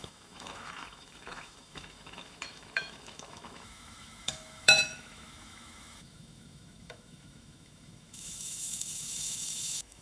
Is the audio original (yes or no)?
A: no